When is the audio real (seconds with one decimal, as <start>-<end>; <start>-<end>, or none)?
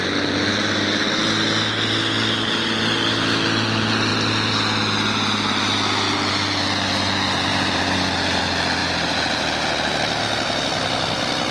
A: 0.0-7.5; 8.4-8.8; 10.2-11.5